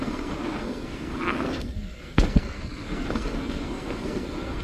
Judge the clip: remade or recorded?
remade